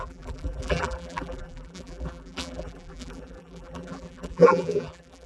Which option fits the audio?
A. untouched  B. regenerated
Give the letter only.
B